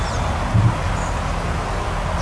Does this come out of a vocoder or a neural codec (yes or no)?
no